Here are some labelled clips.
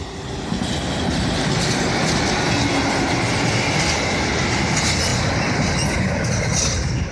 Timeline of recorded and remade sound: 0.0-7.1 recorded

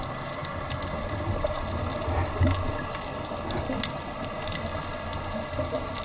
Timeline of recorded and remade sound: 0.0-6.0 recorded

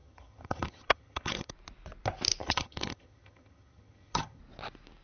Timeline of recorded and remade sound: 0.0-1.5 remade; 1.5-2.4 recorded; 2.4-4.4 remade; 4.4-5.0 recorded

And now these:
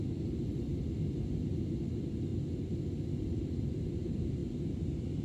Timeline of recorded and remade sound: 0.0-5.2 recorded

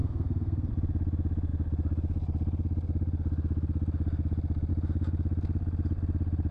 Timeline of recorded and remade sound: 0.0-0.7 remade; 0.7-6.5 recorded